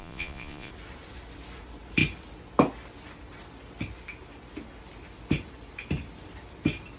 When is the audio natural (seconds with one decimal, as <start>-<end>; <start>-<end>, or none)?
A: 0.7-7.0